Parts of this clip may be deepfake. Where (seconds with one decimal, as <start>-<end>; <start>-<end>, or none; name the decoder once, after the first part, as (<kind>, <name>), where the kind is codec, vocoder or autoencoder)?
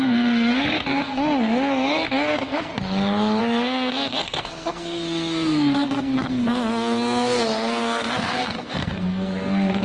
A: 0.0-2.7 (codec, SNAC); 3.4-9.8